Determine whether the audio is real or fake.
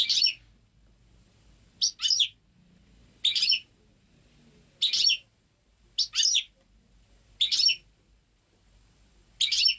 real